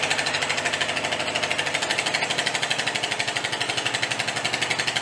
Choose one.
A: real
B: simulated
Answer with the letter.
A